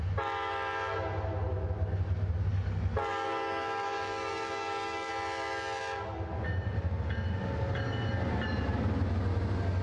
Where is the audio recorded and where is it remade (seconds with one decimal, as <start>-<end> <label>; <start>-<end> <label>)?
0.0-2.5 recorded; 2.5-5.1 remade; 5.1-9.8 recorded